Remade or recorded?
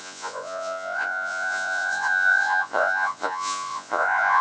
remade